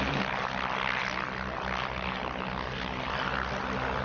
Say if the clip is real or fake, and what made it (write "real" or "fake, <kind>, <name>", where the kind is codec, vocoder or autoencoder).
real